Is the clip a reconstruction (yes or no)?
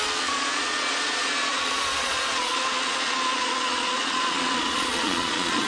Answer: yes